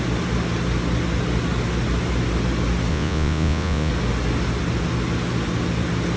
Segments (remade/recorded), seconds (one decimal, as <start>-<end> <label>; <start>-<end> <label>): 0.0-2.9 recorded; 2.9-3.9 remade; 3.9-6.2 recorded